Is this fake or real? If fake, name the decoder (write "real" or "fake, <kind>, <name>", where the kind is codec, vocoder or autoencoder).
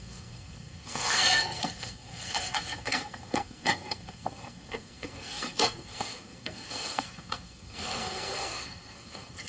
fake, codec, SNAC